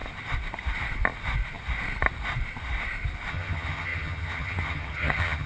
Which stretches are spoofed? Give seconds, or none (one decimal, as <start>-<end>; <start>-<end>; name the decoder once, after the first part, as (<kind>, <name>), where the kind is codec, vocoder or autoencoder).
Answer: 3.3-5.5 (vocoder, HiFi-GAN)